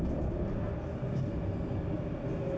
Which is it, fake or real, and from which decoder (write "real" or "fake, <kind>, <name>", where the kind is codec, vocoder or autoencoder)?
real